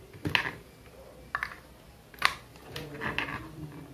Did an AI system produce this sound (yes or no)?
no